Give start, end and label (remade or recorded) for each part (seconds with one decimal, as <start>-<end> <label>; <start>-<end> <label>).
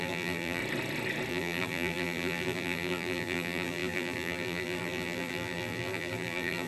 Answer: 0.0-0.6 remade; 0.6-1.3 recorded; 1.3-6.7 remade